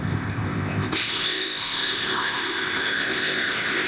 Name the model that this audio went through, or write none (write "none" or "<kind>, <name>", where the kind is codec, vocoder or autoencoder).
codec, ZipCodec